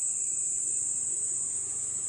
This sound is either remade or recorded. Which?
remade